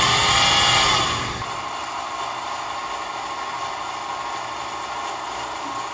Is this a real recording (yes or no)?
yes